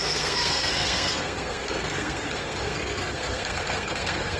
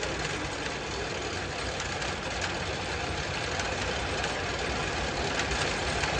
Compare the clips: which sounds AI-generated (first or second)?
first